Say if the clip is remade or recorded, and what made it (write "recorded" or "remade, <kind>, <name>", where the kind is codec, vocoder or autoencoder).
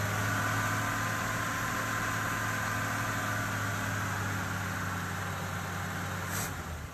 recorded